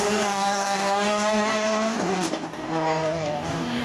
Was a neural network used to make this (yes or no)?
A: yes